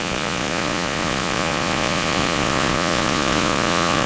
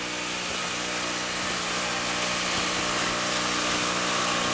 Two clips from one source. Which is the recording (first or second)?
second